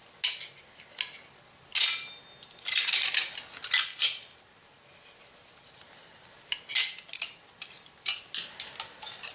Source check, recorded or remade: recorded